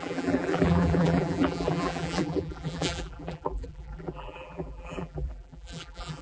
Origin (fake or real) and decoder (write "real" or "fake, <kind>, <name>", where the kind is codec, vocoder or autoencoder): fake, vocoder, BigVGAN v2